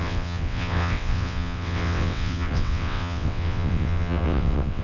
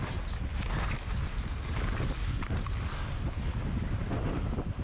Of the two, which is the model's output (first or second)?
first